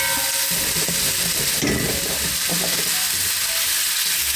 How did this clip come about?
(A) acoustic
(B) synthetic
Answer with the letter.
A